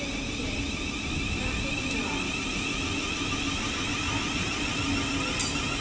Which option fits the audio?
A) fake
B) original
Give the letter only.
B